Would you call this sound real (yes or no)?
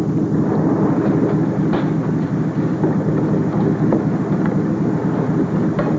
yes